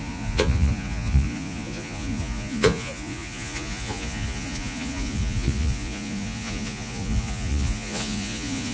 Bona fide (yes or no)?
no